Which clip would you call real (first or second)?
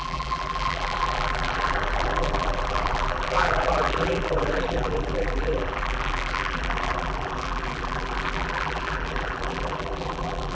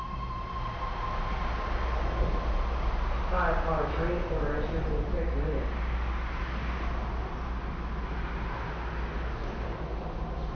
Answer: second